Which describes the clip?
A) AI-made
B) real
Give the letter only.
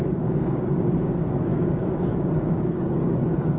A